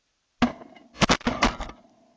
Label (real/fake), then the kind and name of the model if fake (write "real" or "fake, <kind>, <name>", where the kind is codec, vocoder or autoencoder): real